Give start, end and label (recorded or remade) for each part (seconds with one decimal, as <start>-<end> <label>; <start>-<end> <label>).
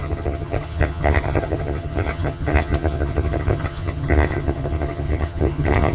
0.0-5.9 remade